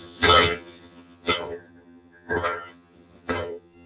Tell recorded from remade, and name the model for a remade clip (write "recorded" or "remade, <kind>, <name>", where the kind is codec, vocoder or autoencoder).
remade, vocoder, HiFi-GAN